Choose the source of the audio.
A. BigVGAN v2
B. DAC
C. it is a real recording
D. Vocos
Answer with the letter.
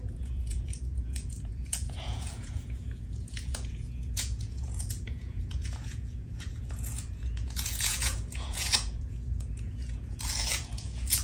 D